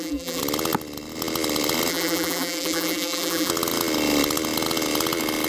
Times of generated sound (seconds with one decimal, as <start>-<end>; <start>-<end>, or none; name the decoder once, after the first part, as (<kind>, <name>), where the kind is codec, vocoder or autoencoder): 0.0-0.4 (vocoder, BigVGAN v2); 1.9-3.5